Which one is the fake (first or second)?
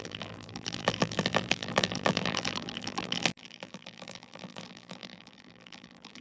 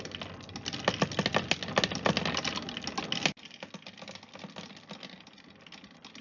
first